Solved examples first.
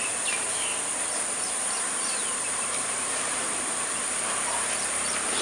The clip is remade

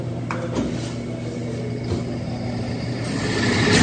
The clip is recorded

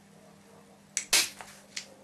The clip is recorded